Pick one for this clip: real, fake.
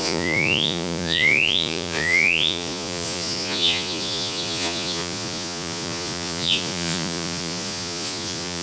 fake